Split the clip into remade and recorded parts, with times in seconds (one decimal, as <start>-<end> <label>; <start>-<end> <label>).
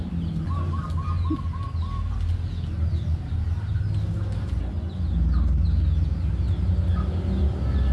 0.0-7.9 recorded